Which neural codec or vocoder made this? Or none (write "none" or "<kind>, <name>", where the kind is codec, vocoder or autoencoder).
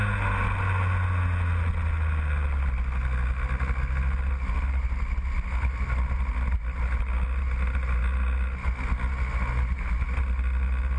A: none